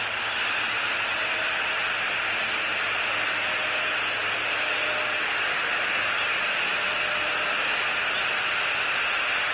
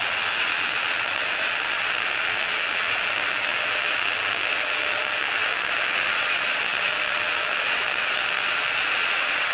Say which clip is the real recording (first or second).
first